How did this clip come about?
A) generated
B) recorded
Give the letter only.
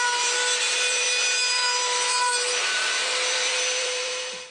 A